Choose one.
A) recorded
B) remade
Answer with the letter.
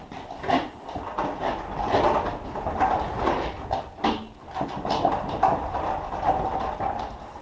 A